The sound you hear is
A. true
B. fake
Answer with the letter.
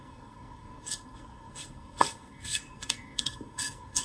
B